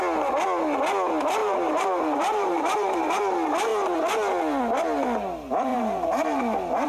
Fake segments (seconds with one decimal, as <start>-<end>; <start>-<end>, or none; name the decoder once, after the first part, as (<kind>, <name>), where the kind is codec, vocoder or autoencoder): 1.4-3.1 (vocoder, BigVGAN v2); 5.7-6.4